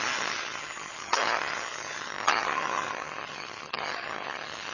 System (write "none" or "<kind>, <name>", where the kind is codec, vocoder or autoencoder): vocoder, HiFi-GAN